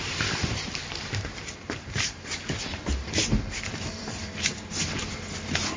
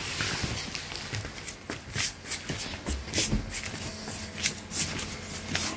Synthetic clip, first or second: first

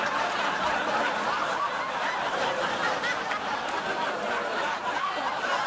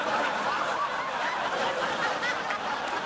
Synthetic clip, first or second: second